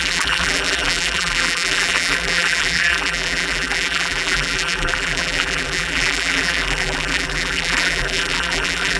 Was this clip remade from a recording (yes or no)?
yes